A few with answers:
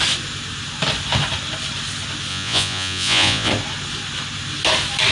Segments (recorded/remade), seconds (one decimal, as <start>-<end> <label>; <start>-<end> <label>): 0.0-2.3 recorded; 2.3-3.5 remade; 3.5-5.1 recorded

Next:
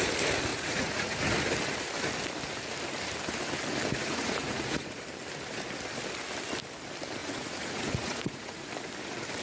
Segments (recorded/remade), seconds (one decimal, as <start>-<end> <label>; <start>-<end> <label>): 0.0-0.5 recorded; 0.5-1.2 remade; 1.2-4.0 recorded; 4.0-5.0 remade; 5.0-7.2 recorded; 7.2-8.7 remade; 8.7-9.4 recorded

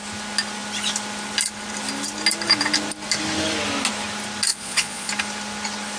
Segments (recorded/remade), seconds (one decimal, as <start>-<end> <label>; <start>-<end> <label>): 0.0-4.5 recorded; 4.5-5.1 remade; 5.1-6.0 recorded